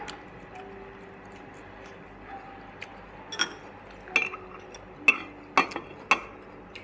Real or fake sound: real